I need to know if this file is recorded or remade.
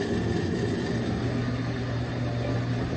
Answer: recorded